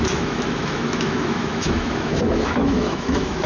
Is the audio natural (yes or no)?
no